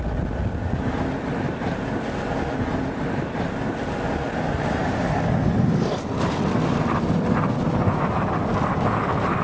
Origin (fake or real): real